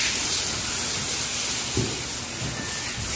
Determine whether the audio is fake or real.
real